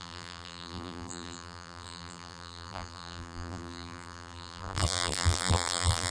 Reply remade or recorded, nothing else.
remade